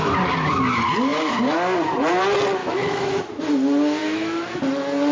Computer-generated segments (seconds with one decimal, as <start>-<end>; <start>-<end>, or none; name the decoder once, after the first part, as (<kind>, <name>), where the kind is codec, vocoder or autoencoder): 2.6-3.2 (autoencoder, DAC-VAE); 4.0-4.6